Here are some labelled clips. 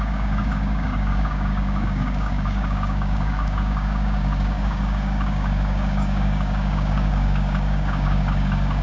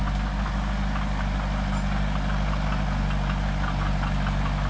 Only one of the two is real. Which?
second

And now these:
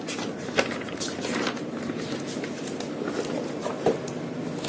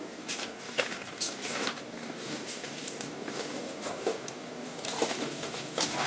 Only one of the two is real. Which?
first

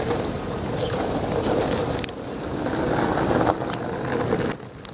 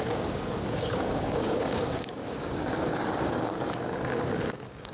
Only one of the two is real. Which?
first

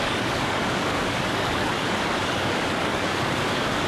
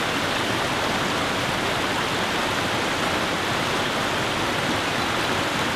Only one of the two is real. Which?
second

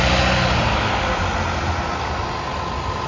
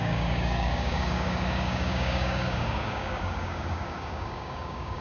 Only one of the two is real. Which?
first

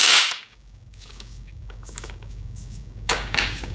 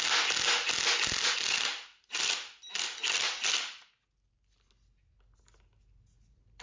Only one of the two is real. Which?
second